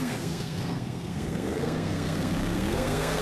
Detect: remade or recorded remade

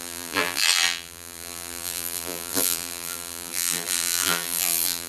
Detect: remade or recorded remade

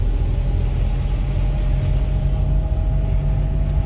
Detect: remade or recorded recorded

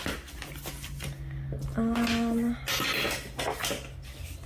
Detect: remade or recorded recorded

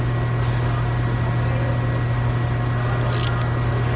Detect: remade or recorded recorded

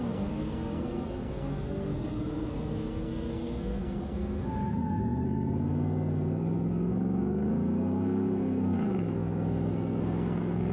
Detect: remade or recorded remade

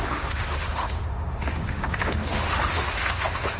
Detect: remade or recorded remade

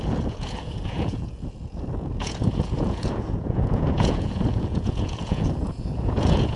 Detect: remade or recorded remade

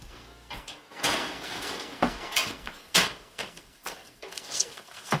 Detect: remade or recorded remade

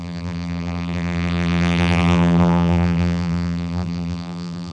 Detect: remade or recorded remade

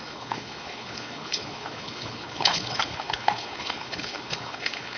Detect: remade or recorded remade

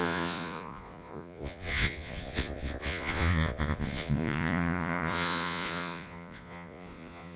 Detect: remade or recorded remade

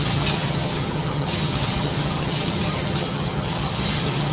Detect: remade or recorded remade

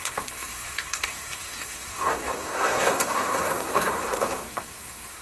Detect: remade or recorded remade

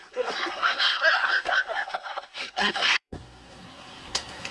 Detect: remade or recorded remade